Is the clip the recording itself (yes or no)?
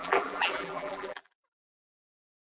no